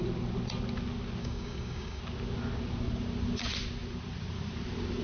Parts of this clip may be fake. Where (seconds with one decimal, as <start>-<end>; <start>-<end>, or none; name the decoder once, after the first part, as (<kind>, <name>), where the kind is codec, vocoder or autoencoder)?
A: 1.2-2.0 (codec, DAC)